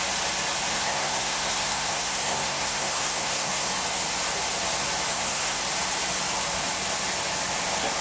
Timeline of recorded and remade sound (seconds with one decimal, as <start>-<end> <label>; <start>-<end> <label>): 0.0-0.7 recorded; 0.7-3.7 remade; 3.7-5.1 recorded; 5.1-5.6 remade; 5.6-8.0 recorded